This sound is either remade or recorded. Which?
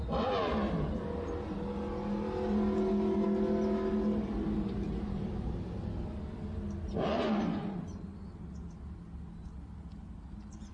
recorded